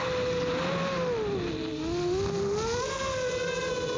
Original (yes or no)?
yes